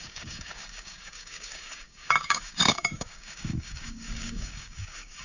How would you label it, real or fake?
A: fake